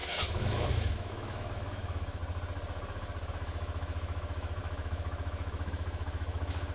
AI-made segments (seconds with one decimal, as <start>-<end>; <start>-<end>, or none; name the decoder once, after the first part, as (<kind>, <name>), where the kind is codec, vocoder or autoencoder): 0.0-2.2 (autoencoder, DAC-VAE); 3.3-6.7